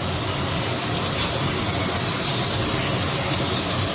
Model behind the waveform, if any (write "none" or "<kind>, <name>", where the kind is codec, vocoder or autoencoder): none